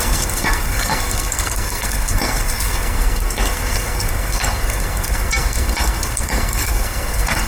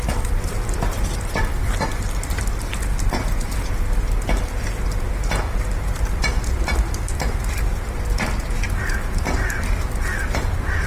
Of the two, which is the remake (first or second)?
first